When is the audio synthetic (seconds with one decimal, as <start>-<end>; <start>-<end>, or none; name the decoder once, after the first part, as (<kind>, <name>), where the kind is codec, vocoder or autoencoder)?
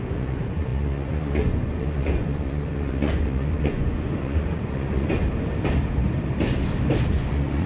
0.0-5.2 (vocoder, Vocos); 7.1-7.7